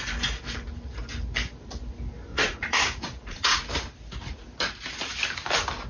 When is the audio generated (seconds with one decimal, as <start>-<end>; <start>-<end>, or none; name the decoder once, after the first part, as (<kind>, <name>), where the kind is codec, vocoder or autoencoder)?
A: 2.3-3.6 (vocoder, Vocos)